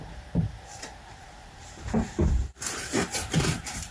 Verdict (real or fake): fake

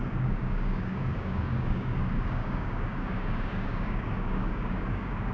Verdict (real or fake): fake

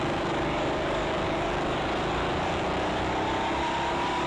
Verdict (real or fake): fake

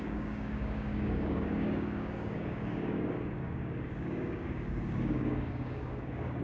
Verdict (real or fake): fake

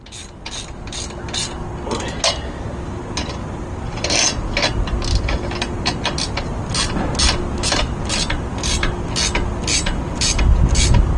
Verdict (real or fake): real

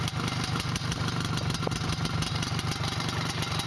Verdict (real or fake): real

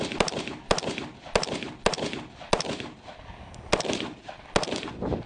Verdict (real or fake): real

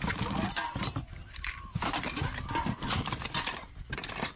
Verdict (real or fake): real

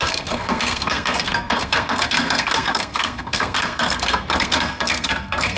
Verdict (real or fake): fake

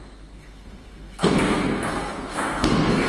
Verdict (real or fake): fake